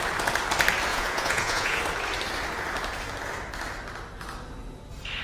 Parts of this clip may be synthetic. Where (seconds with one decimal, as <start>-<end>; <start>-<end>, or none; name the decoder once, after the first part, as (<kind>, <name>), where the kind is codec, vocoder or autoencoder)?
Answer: 0.9-1.8 (vocoder, Vocos)